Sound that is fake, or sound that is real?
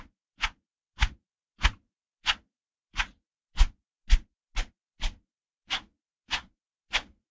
real